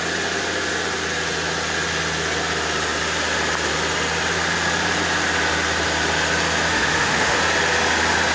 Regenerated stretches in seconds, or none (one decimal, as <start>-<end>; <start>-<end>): 6.7-7.4